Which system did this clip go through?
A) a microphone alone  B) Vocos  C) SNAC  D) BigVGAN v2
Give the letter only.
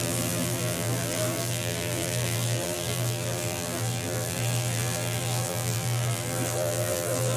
D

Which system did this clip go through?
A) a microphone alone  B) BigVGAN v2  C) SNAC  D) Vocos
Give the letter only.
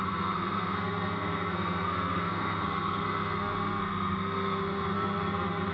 C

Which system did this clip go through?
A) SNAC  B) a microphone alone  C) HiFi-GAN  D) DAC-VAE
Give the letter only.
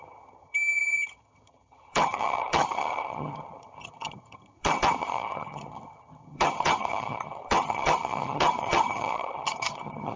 C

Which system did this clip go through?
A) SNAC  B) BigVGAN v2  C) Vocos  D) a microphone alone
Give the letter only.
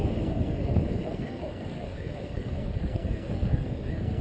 A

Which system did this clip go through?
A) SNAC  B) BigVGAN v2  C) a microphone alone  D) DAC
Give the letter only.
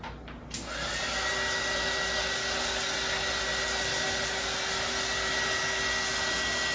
C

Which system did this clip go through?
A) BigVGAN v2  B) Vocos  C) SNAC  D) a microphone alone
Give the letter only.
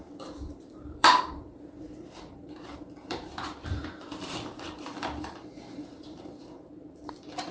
A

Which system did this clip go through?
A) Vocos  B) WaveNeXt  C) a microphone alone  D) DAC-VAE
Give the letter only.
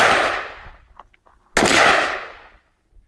C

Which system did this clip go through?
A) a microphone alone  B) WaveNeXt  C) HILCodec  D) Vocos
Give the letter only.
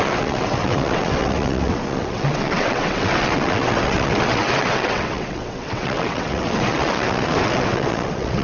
B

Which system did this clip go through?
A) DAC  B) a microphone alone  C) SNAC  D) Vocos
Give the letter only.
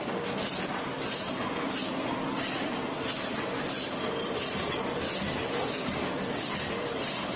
B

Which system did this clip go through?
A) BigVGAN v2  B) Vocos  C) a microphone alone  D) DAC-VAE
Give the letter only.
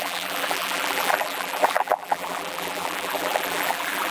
A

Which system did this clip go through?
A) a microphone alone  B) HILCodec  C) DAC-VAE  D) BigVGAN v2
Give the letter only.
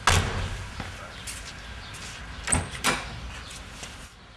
A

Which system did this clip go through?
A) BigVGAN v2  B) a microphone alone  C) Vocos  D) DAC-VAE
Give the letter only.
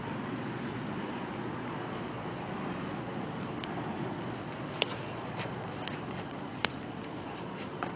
C